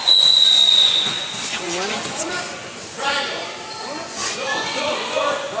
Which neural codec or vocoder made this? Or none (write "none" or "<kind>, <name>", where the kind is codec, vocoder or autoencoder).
vocoder, Vocos